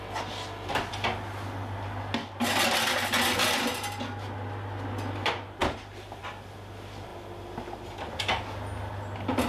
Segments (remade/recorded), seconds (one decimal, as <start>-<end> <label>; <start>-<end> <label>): 0.0-9.5 recorded